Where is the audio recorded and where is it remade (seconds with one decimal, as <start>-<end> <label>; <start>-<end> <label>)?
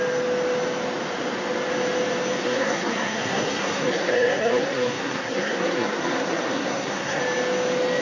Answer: 0.0-2.4 recorded; 2.4-7.2 remade; 7.2-8.0 recorded